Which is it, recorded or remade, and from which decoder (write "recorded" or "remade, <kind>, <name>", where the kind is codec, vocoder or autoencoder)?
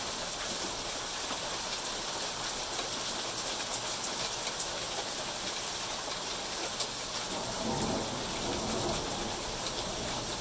recorded